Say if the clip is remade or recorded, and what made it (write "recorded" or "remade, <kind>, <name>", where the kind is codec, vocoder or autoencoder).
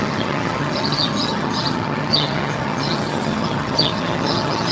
remade, vocoder, HiFi-GAN